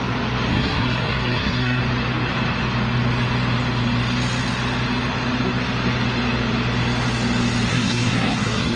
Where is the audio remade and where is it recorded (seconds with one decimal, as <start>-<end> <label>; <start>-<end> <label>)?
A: 0.0-0.5 recorded; 0.5-1.8 remade; 1.8-7.7 recorded; 7.7-8.8 remade